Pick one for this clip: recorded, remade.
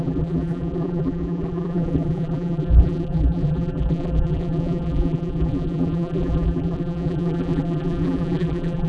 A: remade